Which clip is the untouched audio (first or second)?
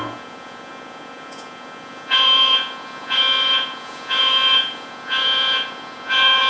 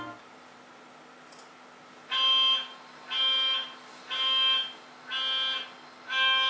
second